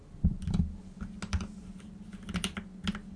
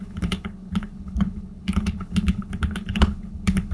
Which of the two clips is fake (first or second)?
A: second